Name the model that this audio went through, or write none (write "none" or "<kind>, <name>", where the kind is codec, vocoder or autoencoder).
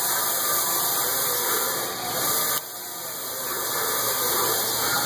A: none